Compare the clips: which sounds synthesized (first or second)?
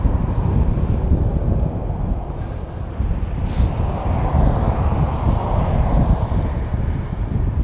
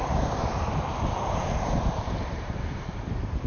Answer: second